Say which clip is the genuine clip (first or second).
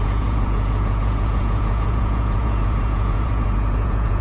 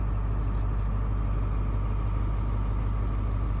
second